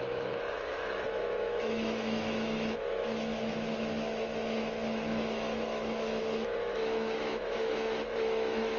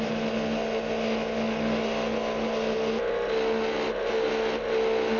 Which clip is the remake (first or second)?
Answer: first